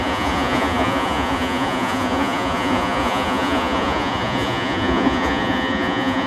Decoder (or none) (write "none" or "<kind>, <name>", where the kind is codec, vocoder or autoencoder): vocoder, Vocos